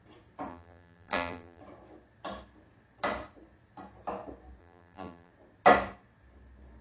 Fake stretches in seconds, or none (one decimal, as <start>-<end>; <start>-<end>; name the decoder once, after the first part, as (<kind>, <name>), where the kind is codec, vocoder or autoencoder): 0.5-1.6 (vocoder, BigVGAN v2); 4.6-5.3